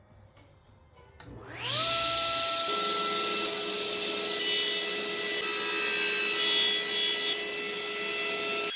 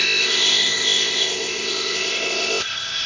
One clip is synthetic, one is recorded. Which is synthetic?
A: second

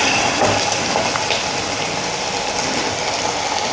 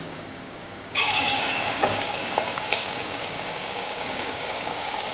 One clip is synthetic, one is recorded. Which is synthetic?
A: second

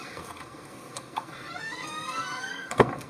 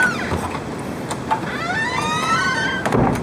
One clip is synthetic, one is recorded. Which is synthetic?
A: first